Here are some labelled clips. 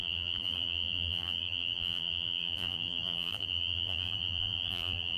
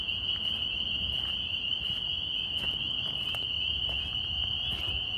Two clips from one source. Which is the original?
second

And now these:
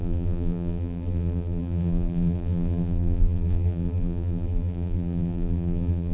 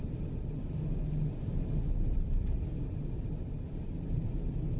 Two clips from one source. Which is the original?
second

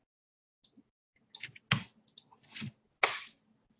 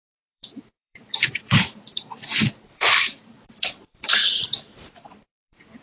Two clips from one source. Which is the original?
first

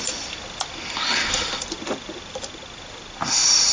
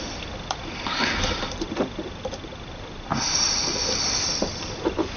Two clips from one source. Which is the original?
first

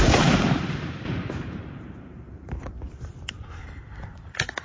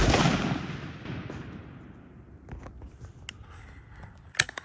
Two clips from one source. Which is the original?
second